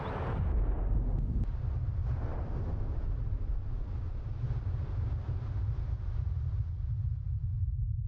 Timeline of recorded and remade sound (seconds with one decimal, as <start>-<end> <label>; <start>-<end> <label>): 0.0-8.1 recorded